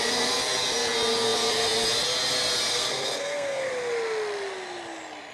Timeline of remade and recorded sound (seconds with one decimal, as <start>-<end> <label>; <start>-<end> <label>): 0.0-2.7 recorded; 2.7-3.7 remade; 3.7-5.3 recorded